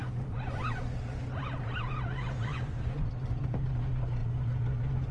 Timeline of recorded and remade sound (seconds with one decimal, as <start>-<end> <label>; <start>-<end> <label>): 0.0-0.8 remade; 0.8-2.5 recorded; 2.5-3.1 remade; 3.1-5.1 recorded